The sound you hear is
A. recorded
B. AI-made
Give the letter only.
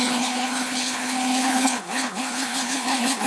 B